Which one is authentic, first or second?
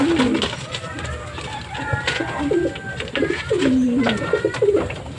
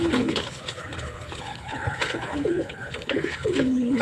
first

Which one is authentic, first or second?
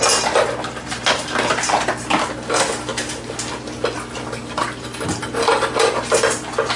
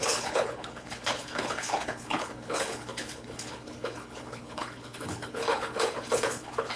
first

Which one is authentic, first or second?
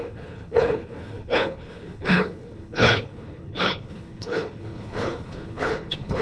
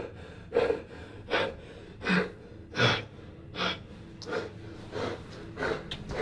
second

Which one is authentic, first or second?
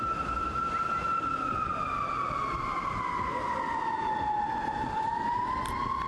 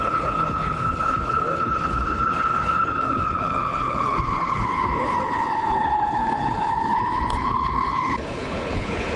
first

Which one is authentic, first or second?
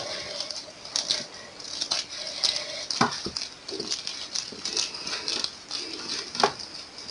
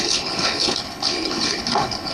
first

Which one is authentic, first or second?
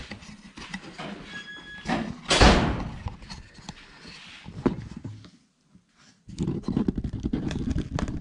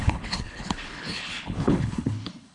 first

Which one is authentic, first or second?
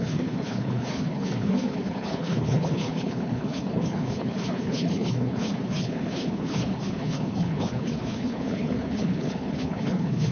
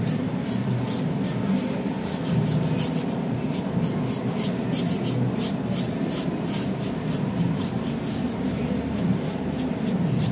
second